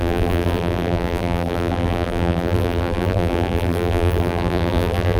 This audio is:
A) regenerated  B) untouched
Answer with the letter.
A